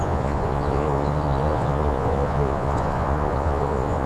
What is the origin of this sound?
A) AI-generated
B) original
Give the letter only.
A